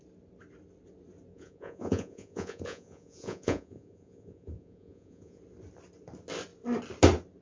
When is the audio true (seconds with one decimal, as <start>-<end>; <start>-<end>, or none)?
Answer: 0.0-1.3; 5.4-7.4